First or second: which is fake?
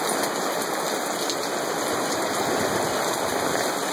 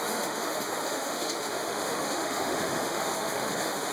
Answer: second